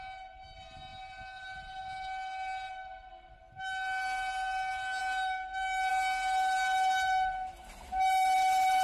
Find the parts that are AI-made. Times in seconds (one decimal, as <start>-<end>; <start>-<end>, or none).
none

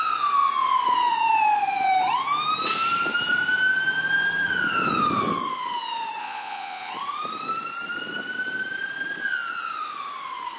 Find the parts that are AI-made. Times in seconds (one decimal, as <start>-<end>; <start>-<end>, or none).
6.2-6.9

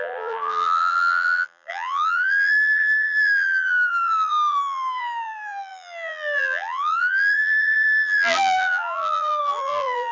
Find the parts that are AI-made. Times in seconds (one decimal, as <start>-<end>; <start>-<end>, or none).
0.0-10.1

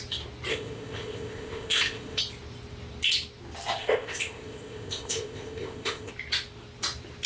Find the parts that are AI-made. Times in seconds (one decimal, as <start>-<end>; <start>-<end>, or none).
0.5-2.2; 3.8-6.1

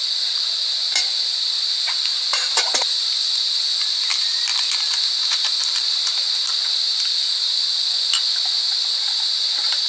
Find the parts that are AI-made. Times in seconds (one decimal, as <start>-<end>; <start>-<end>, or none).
0.0-6.4

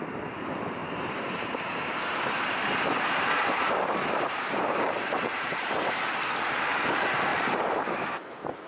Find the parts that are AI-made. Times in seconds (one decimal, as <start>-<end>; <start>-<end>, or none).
0.8-5.9; 7.3-8.7

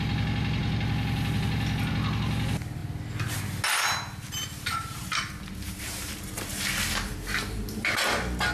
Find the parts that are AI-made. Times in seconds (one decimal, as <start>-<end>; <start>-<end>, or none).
4.7-8.0

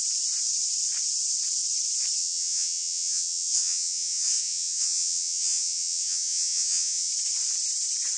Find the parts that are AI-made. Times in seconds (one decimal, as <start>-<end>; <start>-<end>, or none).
2.2-7.1